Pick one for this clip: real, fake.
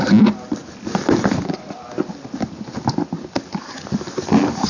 real